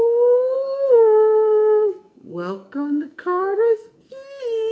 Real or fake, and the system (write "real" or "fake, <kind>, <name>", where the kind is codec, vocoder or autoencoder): fake, codec, SNAC